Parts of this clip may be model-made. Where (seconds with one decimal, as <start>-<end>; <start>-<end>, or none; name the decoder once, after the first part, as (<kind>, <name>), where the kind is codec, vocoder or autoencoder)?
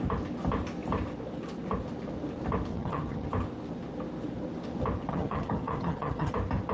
2.7-3.3 (vocoder, HiFi-GAN); 5.1-6.3